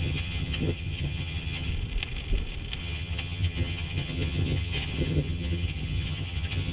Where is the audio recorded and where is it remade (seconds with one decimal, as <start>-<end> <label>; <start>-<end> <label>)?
0.0-1.7 remade; 1.7-2.8 recorded; 2.8-6.7 remade